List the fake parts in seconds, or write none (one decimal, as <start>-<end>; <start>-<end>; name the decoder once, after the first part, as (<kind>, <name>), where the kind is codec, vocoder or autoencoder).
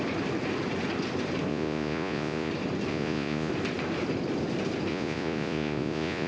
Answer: 1.5-2.5 (vocoder, Vocos); 2.9-3.5; 4.9-6.3